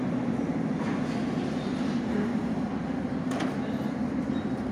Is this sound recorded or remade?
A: recorded